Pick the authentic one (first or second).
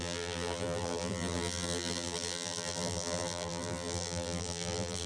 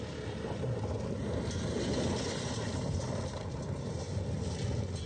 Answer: second